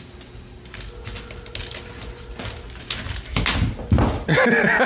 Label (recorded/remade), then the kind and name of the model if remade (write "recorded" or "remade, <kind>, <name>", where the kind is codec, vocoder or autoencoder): recorded